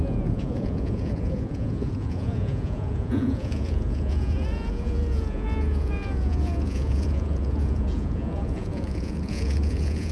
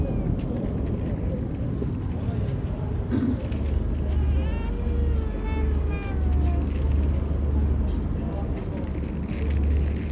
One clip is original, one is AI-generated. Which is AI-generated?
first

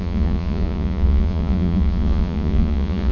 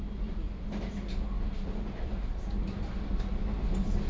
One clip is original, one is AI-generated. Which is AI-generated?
first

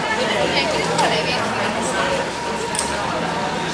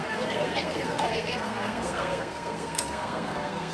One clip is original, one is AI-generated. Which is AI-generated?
second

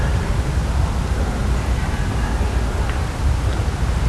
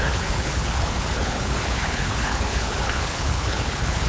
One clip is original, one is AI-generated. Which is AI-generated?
second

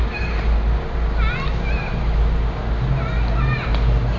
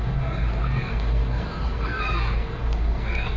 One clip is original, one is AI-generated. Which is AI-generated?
second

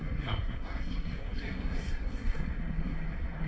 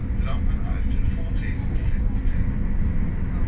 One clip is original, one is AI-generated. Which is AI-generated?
first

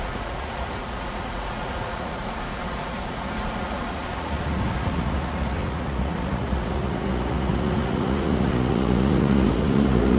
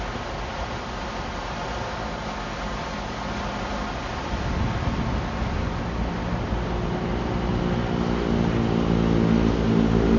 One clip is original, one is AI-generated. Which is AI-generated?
first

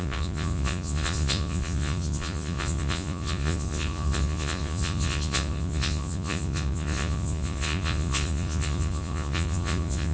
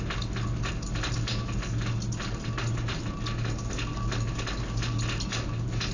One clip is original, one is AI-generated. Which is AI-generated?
first